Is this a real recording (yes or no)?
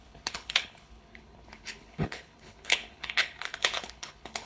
no